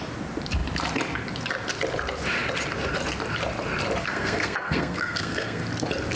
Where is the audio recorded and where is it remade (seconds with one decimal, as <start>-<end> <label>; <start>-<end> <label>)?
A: 0.0-4.0 recorded; 4.0-5.6 remade; 5.6-6.2 recorded